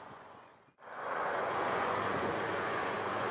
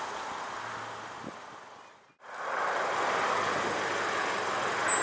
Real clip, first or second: second